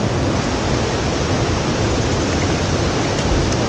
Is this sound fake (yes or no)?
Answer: no